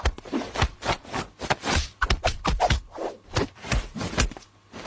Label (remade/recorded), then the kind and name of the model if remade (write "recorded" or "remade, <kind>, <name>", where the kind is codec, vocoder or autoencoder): recorded